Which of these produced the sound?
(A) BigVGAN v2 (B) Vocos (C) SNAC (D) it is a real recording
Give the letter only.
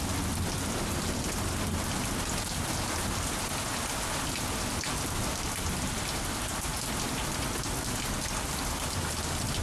D